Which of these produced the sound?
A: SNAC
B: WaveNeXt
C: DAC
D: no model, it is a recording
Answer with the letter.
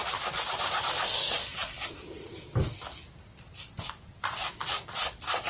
D